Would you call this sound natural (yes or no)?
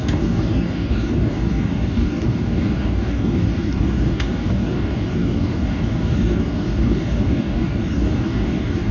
no